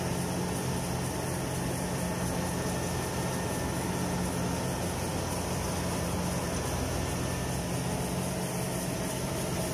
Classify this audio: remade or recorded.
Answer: recorded